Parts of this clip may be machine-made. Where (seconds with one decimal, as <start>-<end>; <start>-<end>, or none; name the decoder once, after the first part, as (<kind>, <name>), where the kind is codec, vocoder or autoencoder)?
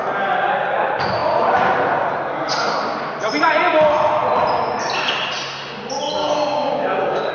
6.2-7.3 (codec, DAC)